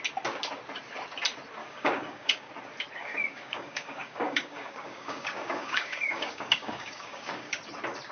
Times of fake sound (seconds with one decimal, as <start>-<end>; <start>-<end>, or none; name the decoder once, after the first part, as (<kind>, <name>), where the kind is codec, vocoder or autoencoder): 1.6-2.5 (codec, DAC); 3.0-7.6